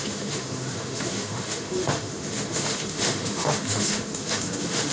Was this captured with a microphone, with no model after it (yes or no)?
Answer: no